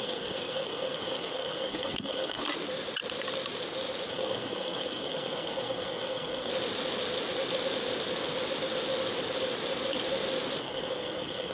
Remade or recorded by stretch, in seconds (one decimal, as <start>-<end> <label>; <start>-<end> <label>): 0.0-2.4 remade; 2.4-4.1 recorded; 4.1-6.5 remade; 6.5-10.6 recorded; 10.6-11.5 remade